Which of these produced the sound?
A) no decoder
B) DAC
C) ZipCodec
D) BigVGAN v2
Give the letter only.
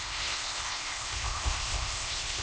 C